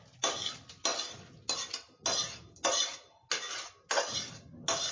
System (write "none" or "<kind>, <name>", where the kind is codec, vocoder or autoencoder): none